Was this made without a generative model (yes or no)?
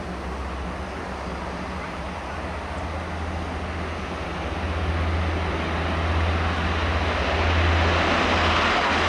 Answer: yes